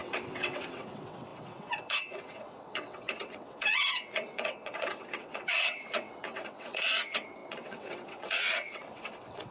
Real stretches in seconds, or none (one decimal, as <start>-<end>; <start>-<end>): none

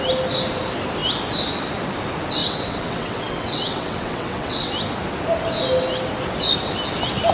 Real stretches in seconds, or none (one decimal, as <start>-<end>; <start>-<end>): 0.0-2.4; 4.7-7.3

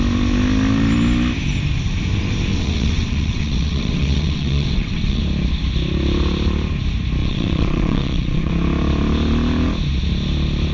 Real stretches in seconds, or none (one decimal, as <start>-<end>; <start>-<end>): 0.0-2.5; 5.2-7.2; 8.5-10.7